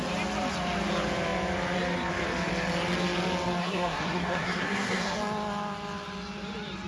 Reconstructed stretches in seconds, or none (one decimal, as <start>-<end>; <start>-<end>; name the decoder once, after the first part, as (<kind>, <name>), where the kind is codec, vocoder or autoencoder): 3.6-5.2 (codec, SNAC)